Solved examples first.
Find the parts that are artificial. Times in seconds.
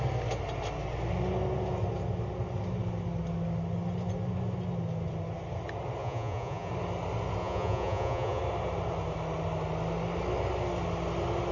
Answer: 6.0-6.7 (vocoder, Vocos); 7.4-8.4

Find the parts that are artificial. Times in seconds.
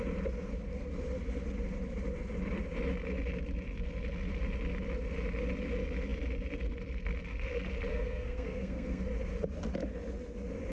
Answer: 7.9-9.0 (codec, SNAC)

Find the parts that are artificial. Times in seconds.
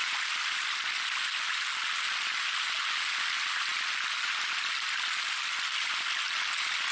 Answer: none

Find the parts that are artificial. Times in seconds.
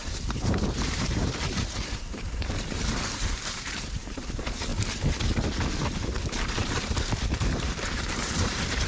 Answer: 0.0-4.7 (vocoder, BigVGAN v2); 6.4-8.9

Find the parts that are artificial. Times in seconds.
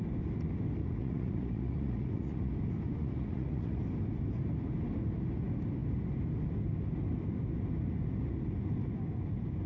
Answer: 0.8-2.5 (vocoder, Vocos); 3.0-3.8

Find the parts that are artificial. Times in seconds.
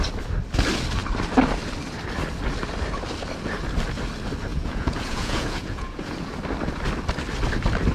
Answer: 4.5-6.0 (vocoder, Vocos)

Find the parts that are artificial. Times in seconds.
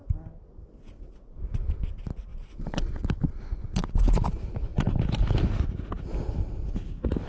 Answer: 2.3-3.9 (vocoder, Vocos)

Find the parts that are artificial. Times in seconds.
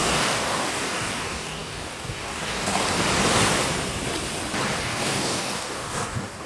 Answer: 0.0-2.8 (codec, DAC); 4.8-6.5